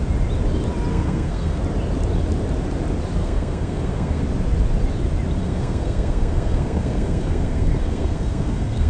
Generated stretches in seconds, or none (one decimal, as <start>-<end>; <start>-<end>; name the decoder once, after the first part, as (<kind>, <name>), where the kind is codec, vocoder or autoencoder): 0.9-1.6 (codec, SNAC); 3.2-4.2; 5.4-8.9